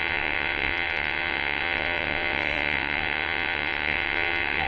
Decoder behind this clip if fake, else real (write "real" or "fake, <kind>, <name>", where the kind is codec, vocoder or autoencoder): fake, vocoder, WaveNeXt